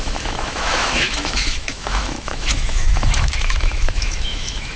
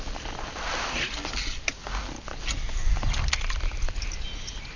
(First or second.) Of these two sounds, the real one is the second